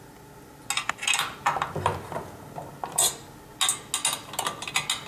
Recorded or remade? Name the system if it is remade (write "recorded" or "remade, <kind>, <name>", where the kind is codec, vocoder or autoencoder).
recorded